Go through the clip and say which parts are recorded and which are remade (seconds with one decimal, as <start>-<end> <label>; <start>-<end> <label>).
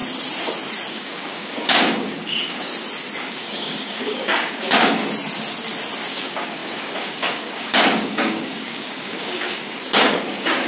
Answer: 0.0-0.9 recorded; 0.9-2.7 remade; 2.7-3.3 recorded; 3.3-5.0 remade; 5.0-6.1 recorded; 6.1-10.7 remade